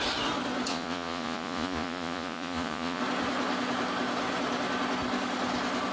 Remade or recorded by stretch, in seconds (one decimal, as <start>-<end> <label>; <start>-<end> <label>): 0.0-0.7 recorded; 0.7-3.0 remade; 3.0-5.9 recorded